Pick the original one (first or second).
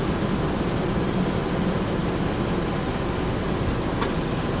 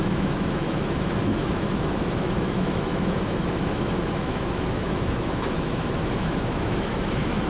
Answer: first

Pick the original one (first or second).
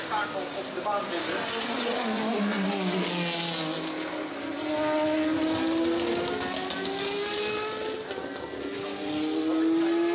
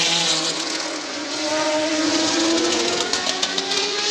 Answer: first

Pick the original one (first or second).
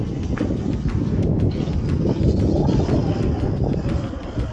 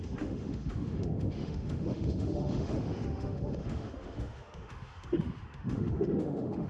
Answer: first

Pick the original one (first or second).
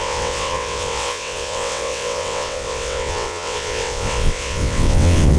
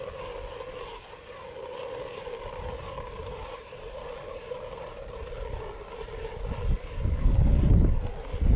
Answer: second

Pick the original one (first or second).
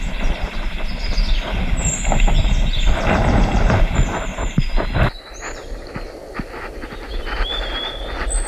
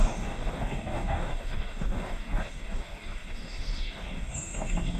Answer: first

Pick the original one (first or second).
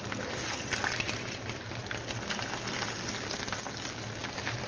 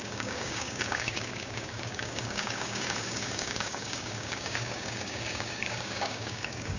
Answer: first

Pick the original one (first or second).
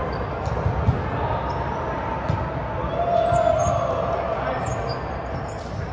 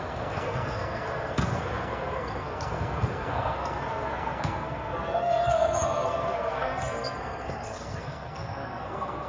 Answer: first